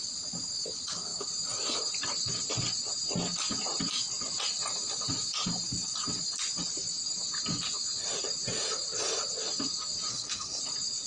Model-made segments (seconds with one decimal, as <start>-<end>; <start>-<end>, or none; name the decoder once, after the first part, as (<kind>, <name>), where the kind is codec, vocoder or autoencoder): 10.1-10.6 (codec, SNAC)